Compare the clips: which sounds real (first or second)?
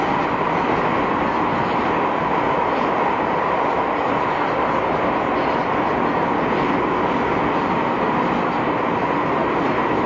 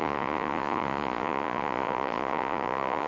first